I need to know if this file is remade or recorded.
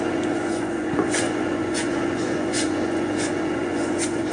remade